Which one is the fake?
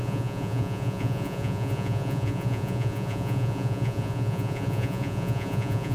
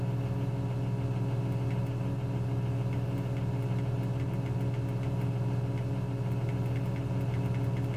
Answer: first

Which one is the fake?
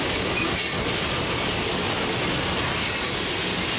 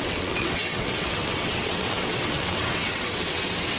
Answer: second